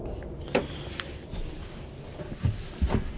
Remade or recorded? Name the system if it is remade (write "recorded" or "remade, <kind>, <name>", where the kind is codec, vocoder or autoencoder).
recorded